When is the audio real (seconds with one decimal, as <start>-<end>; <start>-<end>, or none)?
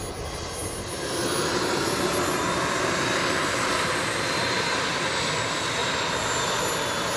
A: 0.0-7.2